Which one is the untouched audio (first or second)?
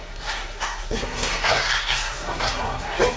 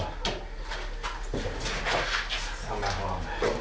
second